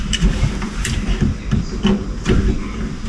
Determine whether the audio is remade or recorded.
recorded